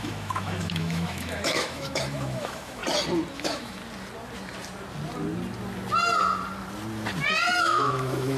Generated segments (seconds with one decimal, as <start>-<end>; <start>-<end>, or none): 0.0-2.8; 3.3-3.8; 7.6-8.4